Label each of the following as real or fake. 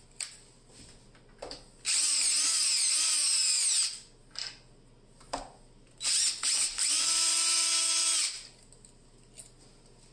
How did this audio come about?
real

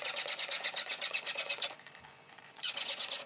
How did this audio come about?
fake